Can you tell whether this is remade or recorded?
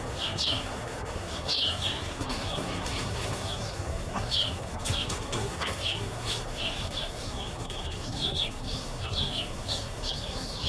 remade